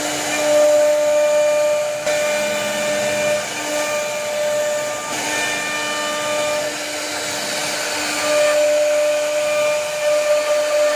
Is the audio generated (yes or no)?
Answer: no